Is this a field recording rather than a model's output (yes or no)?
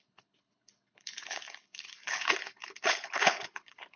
no